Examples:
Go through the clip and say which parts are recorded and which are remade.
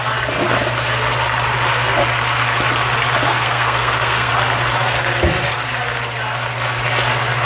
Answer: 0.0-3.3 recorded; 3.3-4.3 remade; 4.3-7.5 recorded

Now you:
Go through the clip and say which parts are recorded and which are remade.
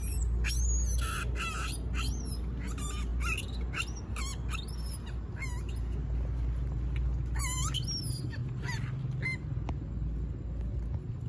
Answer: 0.0-11.3 recorded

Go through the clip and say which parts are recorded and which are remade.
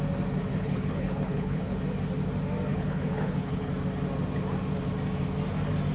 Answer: 0.0-0.5 recorded; 0.5-1.8 remade; 1.8-2.7 recorded; 2.7-3.7 remade; 3.7-5.9 recorded